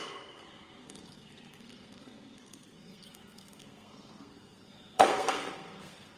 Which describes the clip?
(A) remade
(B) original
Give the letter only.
A